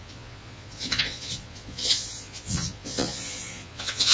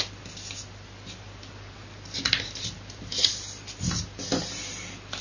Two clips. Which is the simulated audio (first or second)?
first